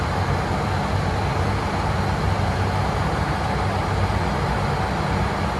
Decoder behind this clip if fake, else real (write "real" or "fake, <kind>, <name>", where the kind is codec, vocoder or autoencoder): real